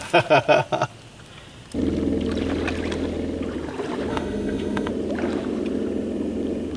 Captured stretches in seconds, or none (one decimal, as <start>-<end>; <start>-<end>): 0.0-4.1; 4.9-6.8